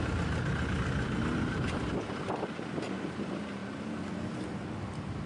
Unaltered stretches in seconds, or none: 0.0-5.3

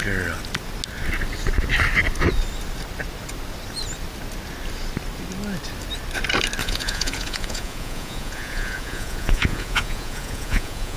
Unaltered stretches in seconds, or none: 0.0-6.6

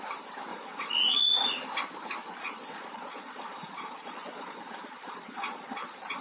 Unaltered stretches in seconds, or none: 0.0-0.5; 1.3-2.2

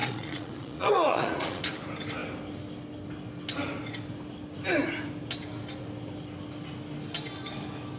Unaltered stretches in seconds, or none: 1.6-8.0

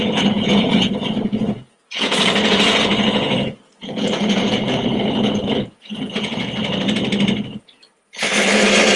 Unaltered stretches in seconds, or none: 6.6-9.0

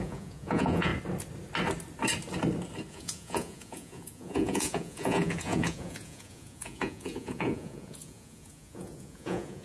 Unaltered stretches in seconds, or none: 0.9-2.9

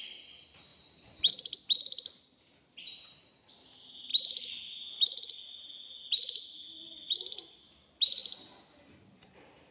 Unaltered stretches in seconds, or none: 0.0-9.7